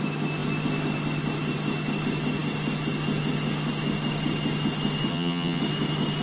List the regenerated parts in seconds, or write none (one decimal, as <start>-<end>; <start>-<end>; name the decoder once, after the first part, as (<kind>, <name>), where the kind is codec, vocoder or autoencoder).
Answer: 5.1-5.6 (vocoder, HiFi-GAN)